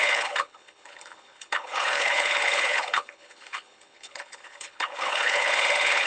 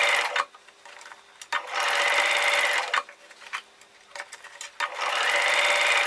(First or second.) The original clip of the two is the second